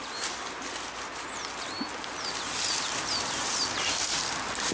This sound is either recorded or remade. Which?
recorded